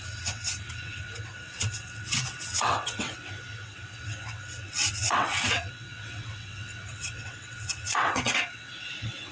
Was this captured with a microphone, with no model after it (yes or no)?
no